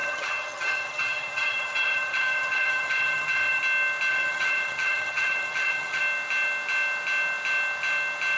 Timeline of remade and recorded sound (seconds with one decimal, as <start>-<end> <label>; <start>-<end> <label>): 0.0-3.6 remade; 3.6-4.1 recorded; 4.1-6.0 remade; 6.0-8.4 recorded